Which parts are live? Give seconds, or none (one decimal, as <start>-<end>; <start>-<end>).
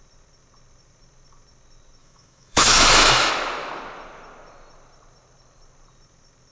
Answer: 0.0-2.0; 3.3-6.5